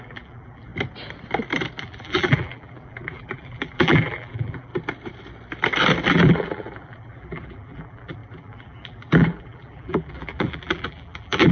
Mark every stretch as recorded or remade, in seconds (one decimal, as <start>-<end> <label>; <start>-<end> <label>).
0.0-0.7 remade; 0.7-1.8 recorded; 1.8-4.7 remade; 4.7-6.1 recorded; 6.1-11.5 remade